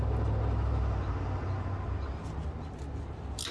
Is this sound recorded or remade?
recorded